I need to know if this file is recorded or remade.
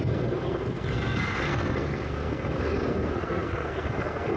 remade